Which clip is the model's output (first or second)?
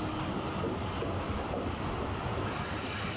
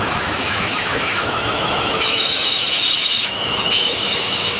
second